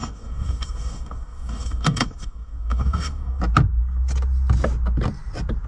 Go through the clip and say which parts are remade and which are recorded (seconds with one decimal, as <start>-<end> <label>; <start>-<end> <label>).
0.0-3.4 remade; 3.4-5.7 recorded